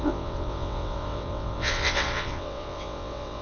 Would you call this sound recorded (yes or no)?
no